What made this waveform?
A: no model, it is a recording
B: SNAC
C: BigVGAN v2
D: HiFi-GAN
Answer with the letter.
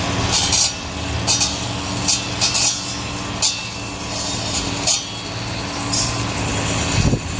A